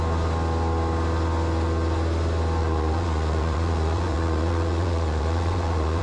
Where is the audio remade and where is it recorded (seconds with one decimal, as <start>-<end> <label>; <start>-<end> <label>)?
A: 0.0-2.6 recorded; 2.6-6.0 remade